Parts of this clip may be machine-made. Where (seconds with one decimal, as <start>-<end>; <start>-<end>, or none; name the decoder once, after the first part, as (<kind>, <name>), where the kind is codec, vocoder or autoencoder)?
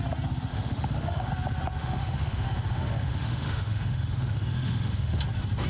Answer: 0.5-1.3 (autoencoder, DAC-VAE); 1.8-5.2